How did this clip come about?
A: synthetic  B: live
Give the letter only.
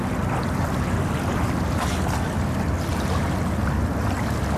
B